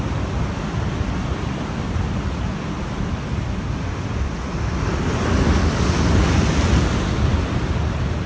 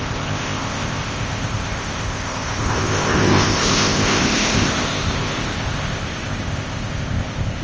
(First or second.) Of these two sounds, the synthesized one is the second